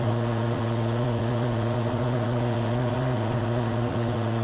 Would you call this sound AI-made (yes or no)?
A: yes